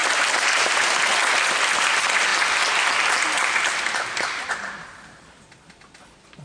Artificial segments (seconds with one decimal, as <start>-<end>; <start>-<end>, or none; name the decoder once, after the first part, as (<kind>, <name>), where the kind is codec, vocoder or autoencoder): none

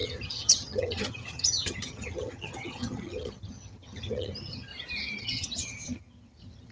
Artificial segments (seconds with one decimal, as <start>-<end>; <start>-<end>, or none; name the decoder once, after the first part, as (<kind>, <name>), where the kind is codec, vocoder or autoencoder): 0.0-4.7 (vocoder, HiFi-GAN); 5.2-6.7